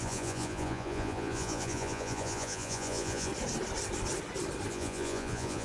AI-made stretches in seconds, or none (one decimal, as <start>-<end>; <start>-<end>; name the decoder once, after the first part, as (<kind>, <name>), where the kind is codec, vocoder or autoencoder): 0.0-3.3 (vocoder, Vocos); 4.7-5.6